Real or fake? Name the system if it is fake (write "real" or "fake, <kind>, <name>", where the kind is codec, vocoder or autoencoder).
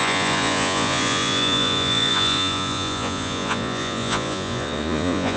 fake, vocoder, Vocos